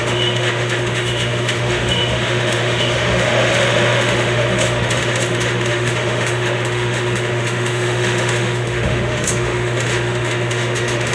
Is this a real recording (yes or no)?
no